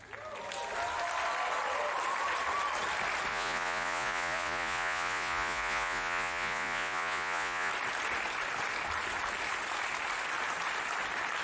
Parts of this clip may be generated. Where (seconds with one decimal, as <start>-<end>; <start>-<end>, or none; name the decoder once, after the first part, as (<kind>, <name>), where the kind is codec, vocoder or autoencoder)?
3.3-7.7 (vocoder, Vocos)